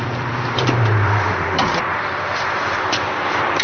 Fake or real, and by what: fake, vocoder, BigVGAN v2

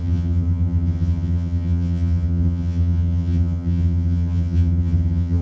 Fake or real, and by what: fake, vocoder, HiFi-GAN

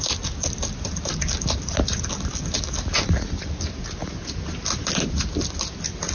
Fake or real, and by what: real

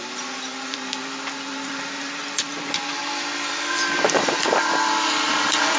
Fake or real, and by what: fake, vocoder, BigVGAN v2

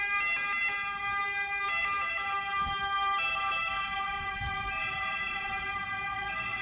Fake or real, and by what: real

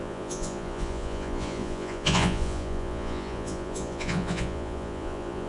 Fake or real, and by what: fake, vocoder, Vocos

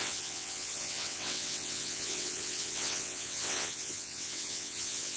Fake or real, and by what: fake, vocoder, WaveNeXt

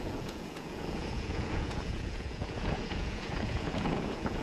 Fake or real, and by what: fake, vocoder, Vocos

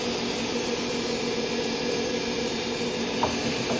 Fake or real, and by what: fake, vocoder, BigVGAN v2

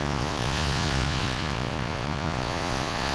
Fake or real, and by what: fake, vocoder, Vocos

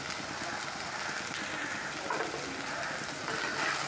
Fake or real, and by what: fake, vocoder, BigVGAN v2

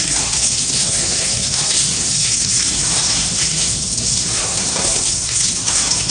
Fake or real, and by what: fake, codec, SNAC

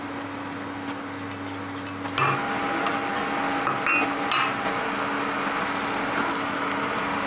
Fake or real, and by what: real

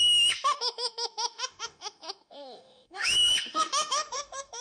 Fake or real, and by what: fake, autoencoder, DAC-VAE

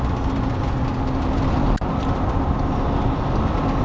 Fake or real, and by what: real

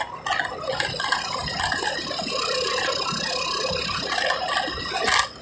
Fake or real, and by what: real